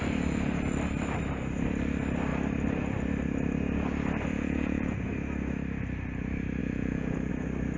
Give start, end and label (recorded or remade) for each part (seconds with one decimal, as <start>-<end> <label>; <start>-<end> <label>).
0.0-4.3 recorded; 4.3-5.1 remade; 5.1-6.6 recorded; 6.6-7.3 remade; 7.3-7.8 recorded